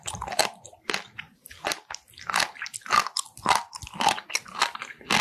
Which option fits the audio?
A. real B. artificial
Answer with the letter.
A